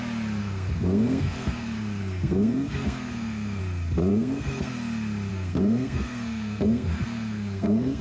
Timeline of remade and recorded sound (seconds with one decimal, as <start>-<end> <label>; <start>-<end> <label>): 0.0-0.4 recorded; 0.4-3.6 remade; 3.6-4.1 recorded; 4.1-4.7 remade; 4.7-5.3 recorded; 5.3-8.0 remade